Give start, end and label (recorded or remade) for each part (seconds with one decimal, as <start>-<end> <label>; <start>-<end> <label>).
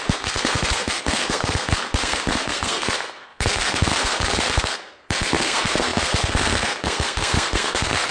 0.0-8.1 remade